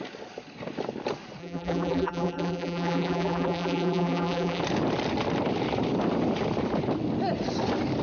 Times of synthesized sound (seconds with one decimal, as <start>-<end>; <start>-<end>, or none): 1.4-4.6